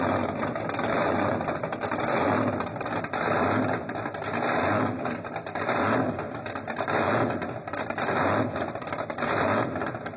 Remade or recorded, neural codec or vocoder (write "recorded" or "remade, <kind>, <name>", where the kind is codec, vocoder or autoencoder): recorded